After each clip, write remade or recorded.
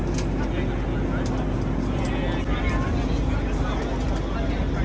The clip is recorded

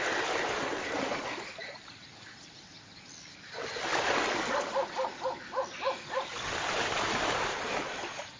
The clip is recorded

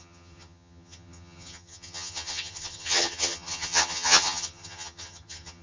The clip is remade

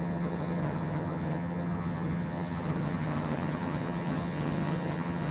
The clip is remade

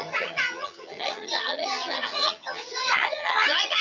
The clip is remade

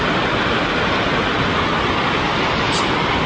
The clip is recorded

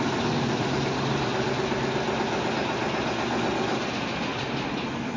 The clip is recorded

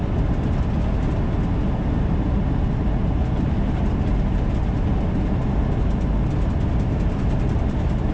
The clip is recorded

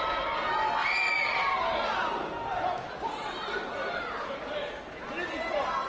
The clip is recorded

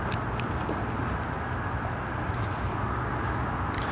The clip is recorded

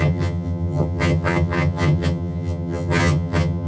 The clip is remade